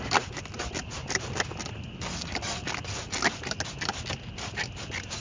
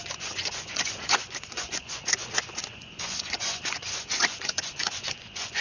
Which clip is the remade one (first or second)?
second